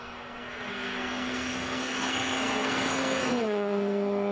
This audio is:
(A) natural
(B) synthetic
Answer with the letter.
B